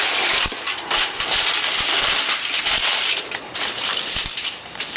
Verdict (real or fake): real